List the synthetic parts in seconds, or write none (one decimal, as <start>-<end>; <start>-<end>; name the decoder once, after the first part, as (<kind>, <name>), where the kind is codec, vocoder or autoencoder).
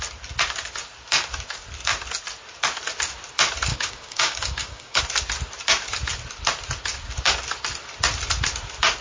3.7-5.0 (codec, DAC)